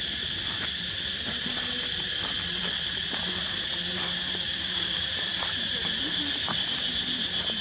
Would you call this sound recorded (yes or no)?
no